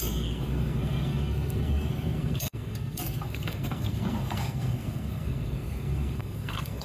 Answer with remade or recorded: remade